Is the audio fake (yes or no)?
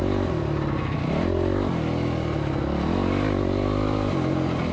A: no